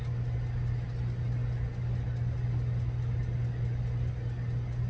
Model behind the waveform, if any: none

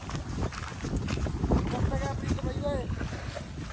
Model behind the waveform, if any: none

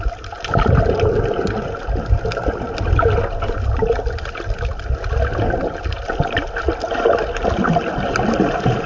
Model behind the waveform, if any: none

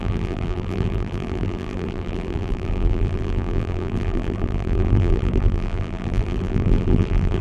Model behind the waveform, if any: vocoder, BigVGAN v2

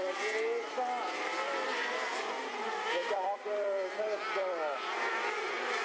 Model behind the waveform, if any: vocoder, BigVGAN v2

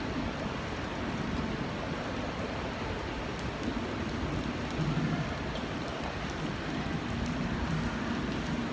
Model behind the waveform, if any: none